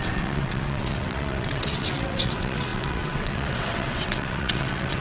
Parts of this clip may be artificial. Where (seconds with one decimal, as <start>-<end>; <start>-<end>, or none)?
0.0-5.0